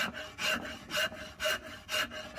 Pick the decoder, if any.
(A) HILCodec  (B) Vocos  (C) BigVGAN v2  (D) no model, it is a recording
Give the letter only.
D